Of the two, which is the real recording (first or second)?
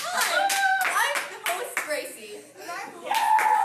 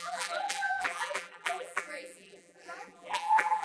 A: first